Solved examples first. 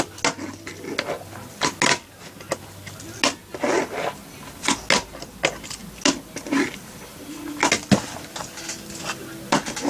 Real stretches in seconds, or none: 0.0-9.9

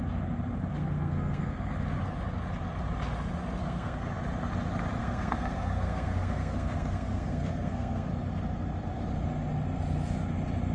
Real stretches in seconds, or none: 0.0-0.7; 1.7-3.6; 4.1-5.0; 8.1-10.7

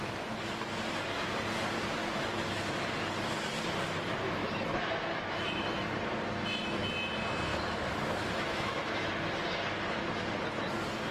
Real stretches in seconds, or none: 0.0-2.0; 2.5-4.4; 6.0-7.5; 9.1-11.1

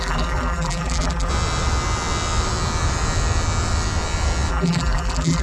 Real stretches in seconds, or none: 1.3-4.5

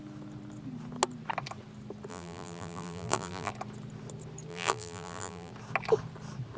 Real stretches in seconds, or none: 0.0-2.1; 3.5-4.5; 5.5-6.6